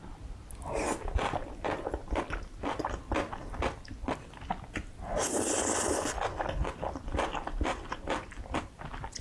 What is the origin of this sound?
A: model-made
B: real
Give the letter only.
B